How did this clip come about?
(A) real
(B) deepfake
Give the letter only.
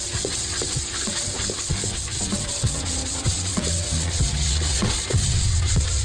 B